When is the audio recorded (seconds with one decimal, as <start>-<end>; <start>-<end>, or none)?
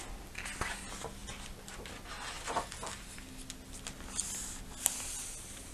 0.0-5.7